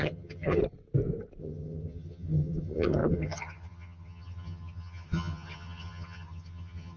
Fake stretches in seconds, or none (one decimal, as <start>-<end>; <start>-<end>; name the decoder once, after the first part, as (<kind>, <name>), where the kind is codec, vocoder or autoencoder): 0.0-0.6 (vocoder, HiFi-GAN); 1.4-7.0